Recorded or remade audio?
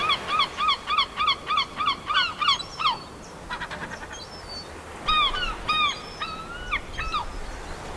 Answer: recorded